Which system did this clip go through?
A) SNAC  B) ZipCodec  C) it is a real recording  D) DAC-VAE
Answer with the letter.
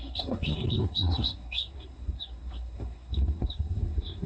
A